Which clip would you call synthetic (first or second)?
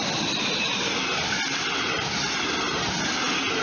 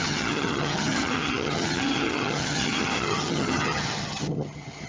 second